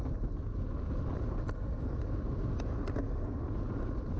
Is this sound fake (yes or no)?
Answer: no